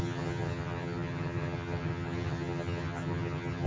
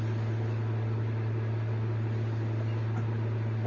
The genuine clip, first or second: second